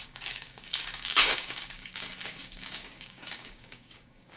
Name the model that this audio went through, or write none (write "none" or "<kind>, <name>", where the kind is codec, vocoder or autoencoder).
codec, DAC